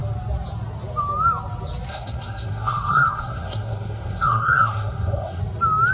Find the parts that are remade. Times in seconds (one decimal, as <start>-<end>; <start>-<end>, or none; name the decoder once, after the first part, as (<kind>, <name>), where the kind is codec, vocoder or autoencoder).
1.9-5.4 (codec, SNAC)